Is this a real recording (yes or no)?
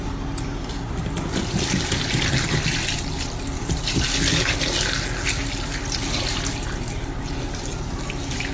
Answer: yes